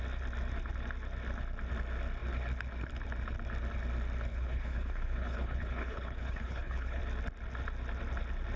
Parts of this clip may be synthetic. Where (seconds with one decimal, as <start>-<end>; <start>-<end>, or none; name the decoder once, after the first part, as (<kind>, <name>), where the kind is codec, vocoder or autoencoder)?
4.3-7.0 (codec, HILCodec)